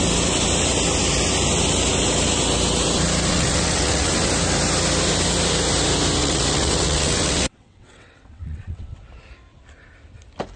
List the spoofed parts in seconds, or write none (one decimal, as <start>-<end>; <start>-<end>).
3.3-4.3; 6.2-9.0